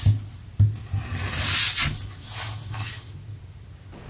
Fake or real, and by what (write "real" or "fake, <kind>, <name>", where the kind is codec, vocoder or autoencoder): real